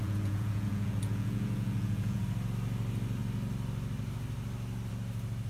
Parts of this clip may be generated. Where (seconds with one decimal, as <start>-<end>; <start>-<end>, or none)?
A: 0.0-2.2